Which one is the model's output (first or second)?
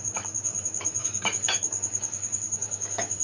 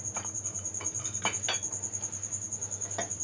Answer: first